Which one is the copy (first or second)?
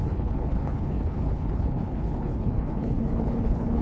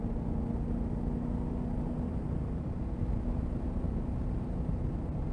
first